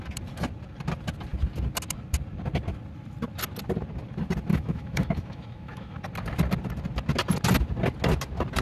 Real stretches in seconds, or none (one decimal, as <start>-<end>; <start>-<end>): 0.0-4.5; 6.0-8.6